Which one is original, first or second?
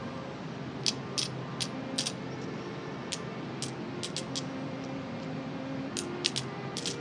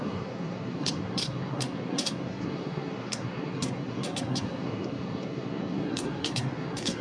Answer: first